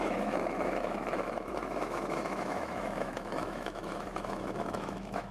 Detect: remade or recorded remade